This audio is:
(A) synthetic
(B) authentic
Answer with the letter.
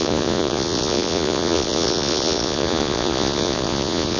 A